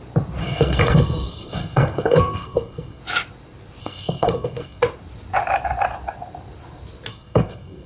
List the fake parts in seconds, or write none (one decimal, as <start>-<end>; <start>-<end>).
0.4-3.0; 3.8-4.8; 7.1-7.9